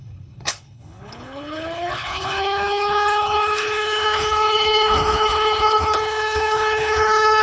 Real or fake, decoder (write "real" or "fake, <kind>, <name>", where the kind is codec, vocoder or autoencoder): fake, codec, HILCodec